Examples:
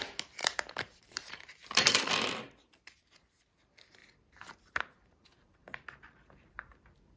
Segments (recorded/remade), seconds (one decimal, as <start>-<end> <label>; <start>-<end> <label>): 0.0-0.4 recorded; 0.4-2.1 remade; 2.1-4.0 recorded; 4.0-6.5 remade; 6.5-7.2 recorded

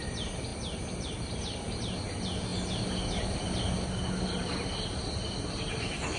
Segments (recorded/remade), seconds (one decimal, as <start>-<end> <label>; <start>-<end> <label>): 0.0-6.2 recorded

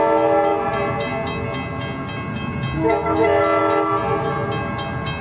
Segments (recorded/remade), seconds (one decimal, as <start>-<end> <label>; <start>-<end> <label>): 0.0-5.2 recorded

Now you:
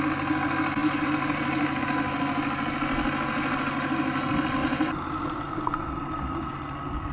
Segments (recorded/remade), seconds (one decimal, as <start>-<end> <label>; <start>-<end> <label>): 0.0-0.8 recorded; 0.8-1.8 remade; 1.8-4.6 recorded; 4.6-6.5 remade; 6.5-7.1 recorded

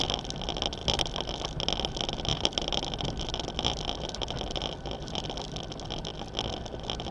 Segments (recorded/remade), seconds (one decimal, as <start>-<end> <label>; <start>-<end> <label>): 0.0-2.3 recorded; 2.3-5.5 remade; 5.5-7.1 recorded